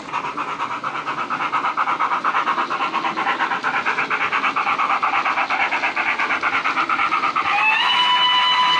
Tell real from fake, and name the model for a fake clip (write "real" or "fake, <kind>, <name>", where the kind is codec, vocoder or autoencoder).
real